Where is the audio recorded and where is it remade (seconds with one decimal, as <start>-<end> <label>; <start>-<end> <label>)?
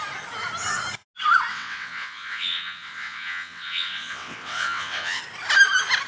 0.0-1.5 recorded; 1.5-5.2 remade; 5.2-6.1 recorded